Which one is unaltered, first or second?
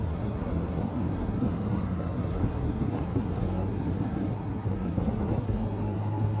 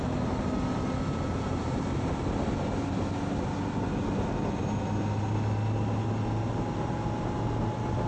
second